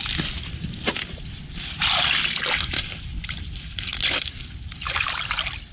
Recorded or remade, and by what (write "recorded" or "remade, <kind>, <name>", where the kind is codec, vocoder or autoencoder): recorded